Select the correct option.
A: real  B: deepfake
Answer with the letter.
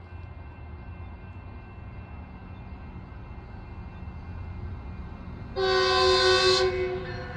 A